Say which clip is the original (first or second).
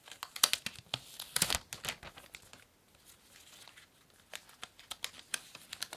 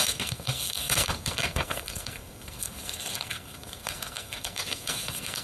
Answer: first